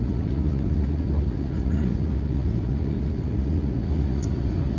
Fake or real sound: fake